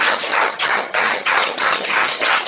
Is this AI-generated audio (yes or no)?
yes